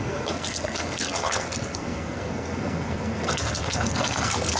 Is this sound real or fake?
fake